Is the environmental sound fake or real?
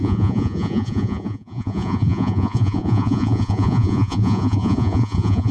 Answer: fake